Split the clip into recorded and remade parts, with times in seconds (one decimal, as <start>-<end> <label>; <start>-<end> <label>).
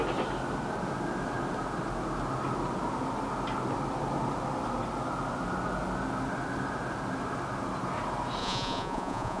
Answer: 0.0-8.4 recorded; 8.4-9.4 remade